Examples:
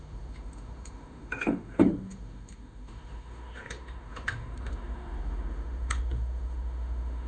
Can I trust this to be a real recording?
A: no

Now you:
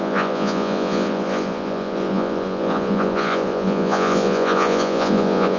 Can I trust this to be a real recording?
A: no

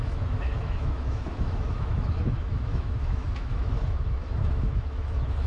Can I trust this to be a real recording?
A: no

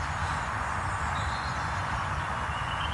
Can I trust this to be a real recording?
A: no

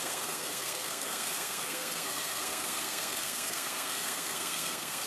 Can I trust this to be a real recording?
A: no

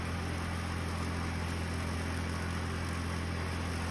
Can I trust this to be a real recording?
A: yes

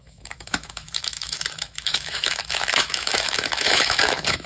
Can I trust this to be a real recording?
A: no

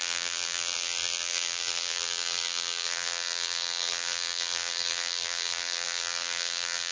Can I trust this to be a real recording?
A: no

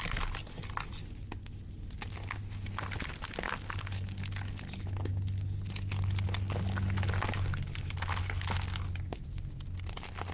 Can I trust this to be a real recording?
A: yes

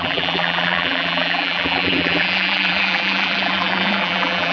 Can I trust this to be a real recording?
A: no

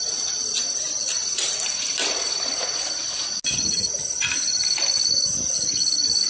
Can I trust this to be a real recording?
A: yes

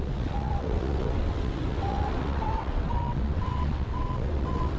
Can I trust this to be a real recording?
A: no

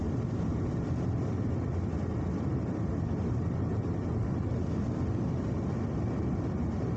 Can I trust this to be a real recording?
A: yes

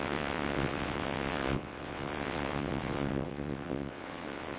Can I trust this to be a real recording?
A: no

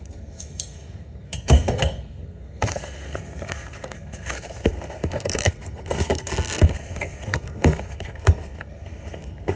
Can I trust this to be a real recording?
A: no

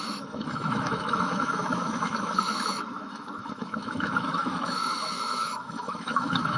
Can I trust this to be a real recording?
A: no